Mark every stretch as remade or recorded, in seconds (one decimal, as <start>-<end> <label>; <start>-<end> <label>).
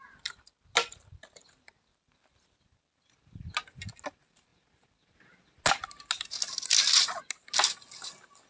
0.0-8.5 recorded